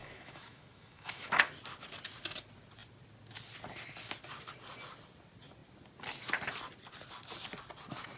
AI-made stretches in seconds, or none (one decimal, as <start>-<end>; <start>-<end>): 0.0-1.4